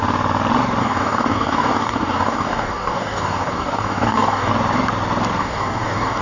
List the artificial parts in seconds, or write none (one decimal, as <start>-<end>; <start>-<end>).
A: 0.8-4.5; 5.4-6.2